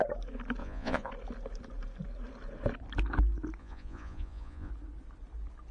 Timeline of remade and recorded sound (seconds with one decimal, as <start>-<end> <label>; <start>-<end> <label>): 0.0-0.6 recorded; 0.6-1.1 remade; 1.1-3.6 recorded; 3.6-4.7 remade; 4.7-5.7 recorded